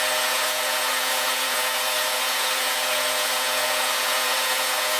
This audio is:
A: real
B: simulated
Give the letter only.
B